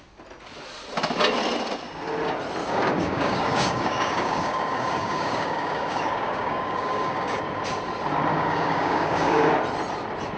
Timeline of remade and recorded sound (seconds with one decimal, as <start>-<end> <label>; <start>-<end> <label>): 0.0-2.6 recorded; 2.6-7.4 remade; 7.4-8.3 recorded; 8.3-9.5 remade; 9.5-10.4 recorded